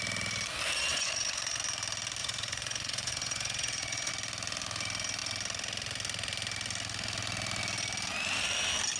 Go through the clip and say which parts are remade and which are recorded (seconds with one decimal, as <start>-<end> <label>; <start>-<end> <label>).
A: 0.0-0.9 recorded; 0.9-1.6 remade; 1.6-2.2 recorded; 2.2-4.1 remade; 4.1-9.0 recorded